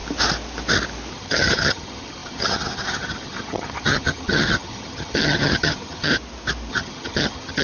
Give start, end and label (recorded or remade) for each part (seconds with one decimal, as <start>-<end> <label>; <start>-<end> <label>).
0.0-1.1 recorded; 1.1-6.1 remade; 6.1-6.7 recorded; 6.7-7.6 remade